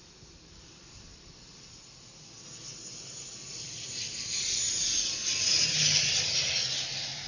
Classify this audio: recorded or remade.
recorded